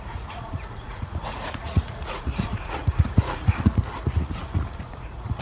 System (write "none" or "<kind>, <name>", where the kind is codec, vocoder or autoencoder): vocoder, Vocos